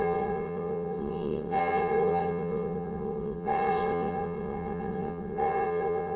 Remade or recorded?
remade